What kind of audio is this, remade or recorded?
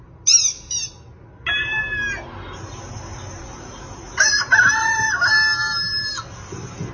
recorded